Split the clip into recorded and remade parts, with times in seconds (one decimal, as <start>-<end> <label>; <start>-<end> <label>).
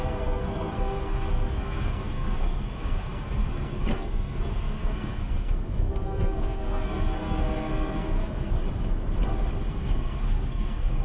0.0-8.6 remade; 8.6-9.7 recorded; 9.7-11.0 remade